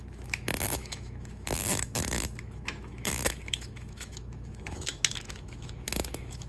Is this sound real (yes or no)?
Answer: no